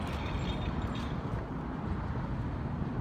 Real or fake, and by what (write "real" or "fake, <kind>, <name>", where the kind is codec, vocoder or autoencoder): real